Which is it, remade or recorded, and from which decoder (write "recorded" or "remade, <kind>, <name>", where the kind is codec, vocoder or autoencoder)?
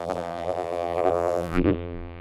remade, vocoder, BigVGAN v2